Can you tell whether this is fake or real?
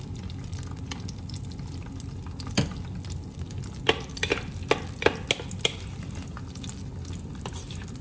real